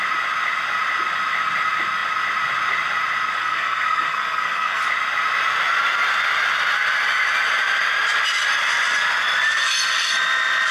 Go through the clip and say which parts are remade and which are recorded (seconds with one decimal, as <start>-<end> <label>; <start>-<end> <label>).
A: 0.0-3.4 recorded; 3.4-4.8 remade; 4.8-10.7 recorded